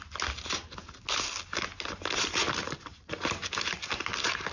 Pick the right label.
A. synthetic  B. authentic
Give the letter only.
B